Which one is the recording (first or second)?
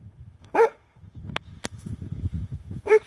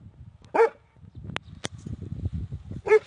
second